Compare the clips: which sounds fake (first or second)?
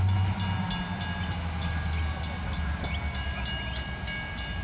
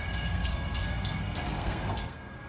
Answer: second